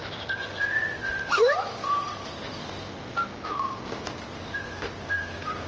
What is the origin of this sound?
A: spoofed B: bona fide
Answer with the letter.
B